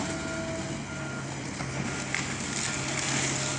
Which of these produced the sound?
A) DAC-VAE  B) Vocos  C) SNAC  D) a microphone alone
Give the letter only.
D